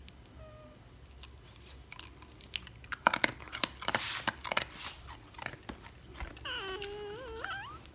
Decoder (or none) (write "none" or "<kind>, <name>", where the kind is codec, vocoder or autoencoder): none